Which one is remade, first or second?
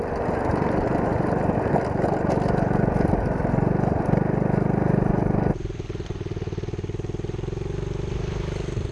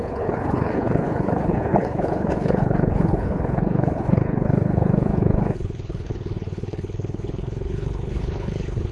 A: second